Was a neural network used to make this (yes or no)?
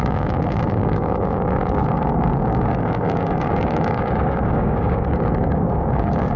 yes